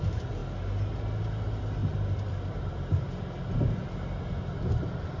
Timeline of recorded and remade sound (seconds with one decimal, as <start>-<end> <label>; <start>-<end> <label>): 0.0-1.8 recorded; 1.8-5.2 remade